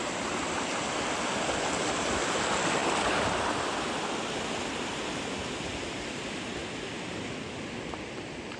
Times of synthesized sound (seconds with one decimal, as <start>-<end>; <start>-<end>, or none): none

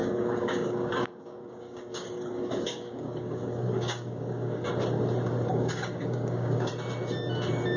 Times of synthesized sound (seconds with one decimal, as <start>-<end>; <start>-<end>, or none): 0.0-4.7; 5.5-6.7

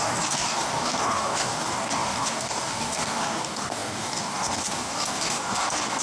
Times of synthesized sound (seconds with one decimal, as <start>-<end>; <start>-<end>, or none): 0.0-6.0

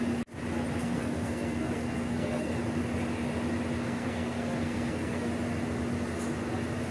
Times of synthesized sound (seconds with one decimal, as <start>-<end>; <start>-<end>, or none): 0.8-2.5; 3.8-5.3

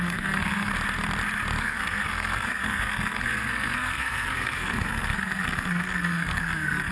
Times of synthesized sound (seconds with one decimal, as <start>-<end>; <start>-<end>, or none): 0.0-0.7; 1.6-6.9

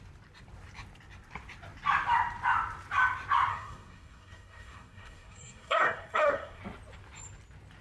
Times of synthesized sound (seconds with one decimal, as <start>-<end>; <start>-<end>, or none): 3.5-6.6